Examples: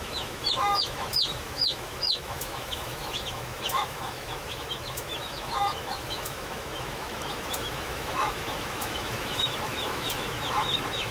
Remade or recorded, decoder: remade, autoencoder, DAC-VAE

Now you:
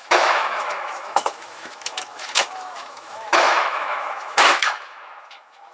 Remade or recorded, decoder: remade, autoencoder, DAC-VAE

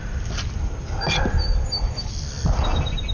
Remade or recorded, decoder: recorded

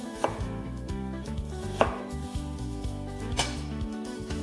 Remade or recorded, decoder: remade, autoencoder, DAC-VAE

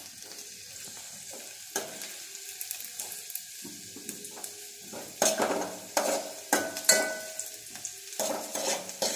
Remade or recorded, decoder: recorded